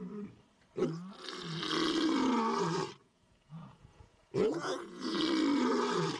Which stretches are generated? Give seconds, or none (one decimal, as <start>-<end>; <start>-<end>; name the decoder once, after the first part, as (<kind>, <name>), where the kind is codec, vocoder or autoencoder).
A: 3.0-5.2 (vocoder, Vocos)